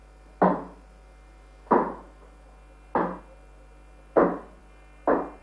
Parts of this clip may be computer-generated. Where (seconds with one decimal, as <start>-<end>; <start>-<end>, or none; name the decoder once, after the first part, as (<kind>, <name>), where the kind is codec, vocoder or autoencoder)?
none